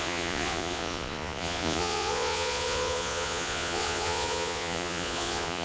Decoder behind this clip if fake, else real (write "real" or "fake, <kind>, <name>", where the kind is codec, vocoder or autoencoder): fake, vocoder, Vocos